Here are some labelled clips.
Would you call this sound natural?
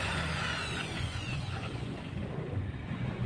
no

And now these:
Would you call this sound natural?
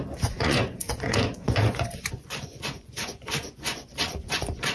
no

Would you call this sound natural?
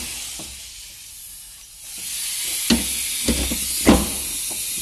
yes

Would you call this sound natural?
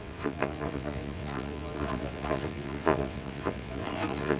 no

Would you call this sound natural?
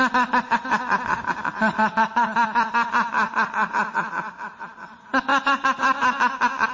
yes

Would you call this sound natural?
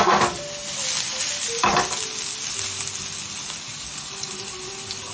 yes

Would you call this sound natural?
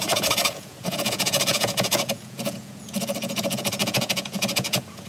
no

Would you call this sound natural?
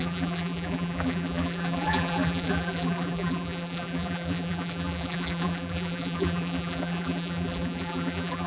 no